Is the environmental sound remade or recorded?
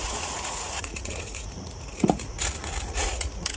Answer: remade